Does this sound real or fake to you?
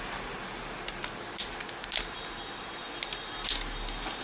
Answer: real